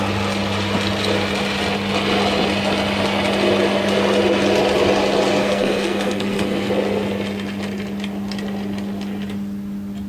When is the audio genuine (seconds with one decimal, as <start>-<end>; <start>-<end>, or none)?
0.0-5.4; 6.7-10.1